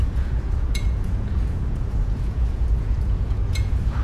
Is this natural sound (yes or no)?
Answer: no